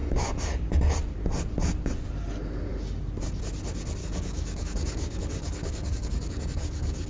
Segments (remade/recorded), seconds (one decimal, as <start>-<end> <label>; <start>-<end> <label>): 0.0-4.0 recorded; 4.0-7.1 remade